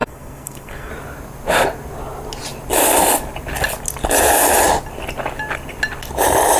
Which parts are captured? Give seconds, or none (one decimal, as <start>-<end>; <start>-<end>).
0.9-6.6